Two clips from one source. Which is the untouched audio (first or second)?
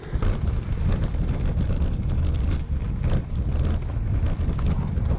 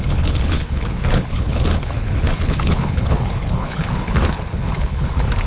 first